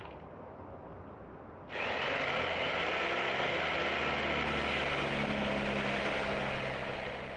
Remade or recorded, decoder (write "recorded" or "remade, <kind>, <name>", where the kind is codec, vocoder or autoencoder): recorded